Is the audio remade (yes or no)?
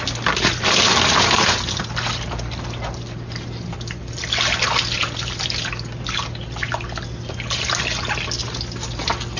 no